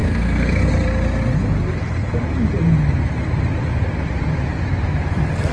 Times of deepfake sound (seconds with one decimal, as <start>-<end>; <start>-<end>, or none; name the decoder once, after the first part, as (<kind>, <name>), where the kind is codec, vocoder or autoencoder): 0.0-0.7 (codec, SNAC)